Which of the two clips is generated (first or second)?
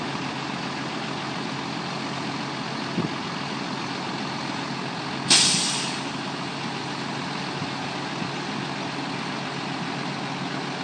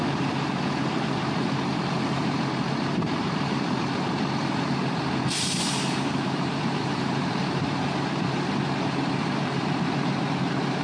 second